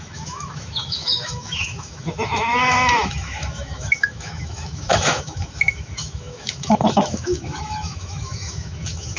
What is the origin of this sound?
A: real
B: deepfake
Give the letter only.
B